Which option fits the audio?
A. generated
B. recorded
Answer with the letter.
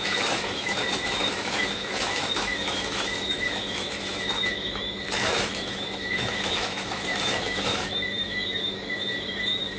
A